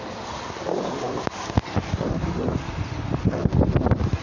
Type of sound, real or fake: real